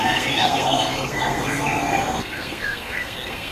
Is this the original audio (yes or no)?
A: no